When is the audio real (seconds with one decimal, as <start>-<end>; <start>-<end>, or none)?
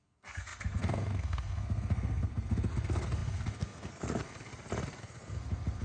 4.5-5.0